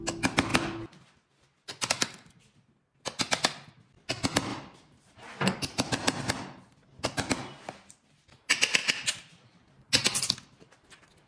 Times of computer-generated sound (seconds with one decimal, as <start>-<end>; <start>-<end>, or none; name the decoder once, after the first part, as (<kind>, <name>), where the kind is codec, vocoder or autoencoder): 4.5-6.2 (vocoder, BigVGAN v2)